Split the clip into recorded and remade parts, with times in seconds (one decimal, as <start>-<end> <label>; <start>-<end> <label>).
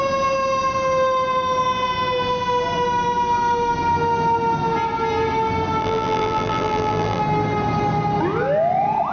0.0-5.8 recorded; 5.8-7.2 remade; 7.2-9.1 recorded